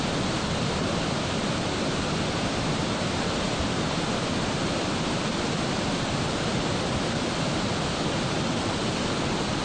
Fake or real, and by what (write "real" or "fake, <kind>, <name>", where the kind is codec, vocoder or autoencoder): fake, vocoder, BigVGAN v2